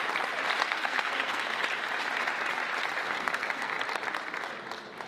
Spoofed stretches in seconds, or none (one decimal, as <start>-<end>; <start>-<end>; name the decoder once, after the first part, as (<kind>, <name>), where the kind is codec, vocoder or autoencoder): 0.6-1.6 (codec, SNAC); 3.0-3.8